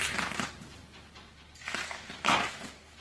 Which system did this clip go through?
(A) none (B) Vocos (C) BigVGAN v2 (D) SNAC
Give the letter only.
C